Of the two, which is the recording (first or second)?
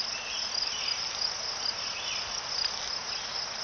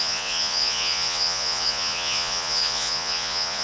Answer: first